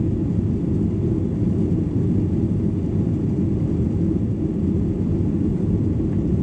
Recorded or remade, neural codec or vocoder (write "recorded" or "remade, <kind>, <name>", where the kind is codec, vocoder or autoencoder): recorded